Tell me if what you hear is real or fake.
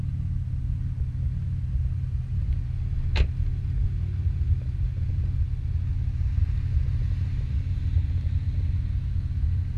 real